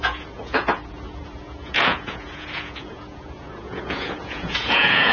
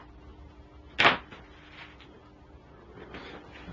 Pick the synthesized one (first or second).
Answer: first